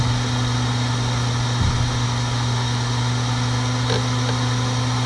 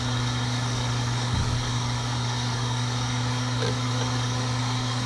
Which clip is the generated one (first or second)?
second